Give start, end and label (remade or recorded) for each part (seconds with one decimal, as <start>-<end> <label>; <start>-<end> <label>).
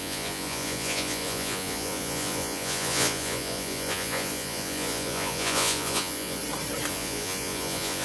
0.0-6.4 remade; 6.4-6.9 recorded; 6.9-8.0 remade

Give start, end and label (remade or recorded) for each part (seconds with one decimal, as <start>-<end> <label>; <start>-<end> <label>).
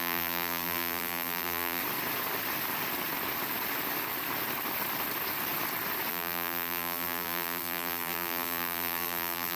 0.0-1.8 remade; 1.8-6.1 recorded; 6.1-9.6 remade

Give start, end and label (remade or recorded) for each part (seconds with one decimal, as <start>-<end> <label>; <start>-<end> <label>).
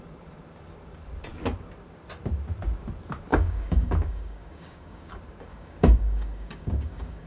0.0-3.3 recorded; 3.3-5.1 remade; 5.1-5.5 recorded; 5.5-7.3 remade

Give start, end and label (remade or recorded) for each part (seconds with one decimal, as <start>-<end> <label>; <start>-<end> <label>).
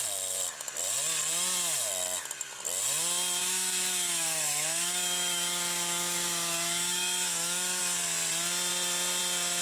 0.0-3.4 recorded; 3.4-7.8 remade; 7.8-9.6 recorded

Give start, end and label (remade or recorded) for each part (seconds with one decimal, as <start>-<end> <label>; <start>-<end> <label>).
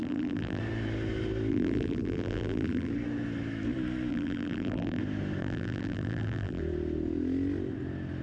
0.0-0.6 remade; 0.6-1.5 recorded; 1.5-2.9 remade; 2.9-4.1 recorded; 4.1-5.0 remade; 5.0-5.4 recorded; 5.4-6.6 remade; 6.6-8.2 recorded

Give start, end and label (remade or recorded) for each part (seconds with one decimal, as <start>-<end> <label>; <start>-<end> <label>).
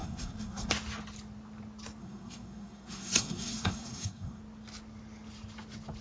0.0-0.7 remade; 0.7-2.0 recorded; 2.0-4.4 remade; 4.4-6.0 recorded